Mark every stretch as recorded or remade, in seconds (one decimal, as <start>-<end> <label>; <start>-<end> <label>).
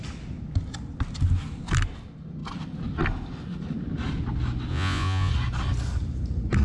0.0-4.7 recorded; 4.7-5.3 remade; 5.3-6.6 recorded